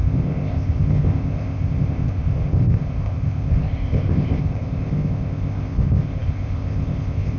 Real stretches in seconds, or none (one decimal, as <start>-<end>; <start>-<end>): none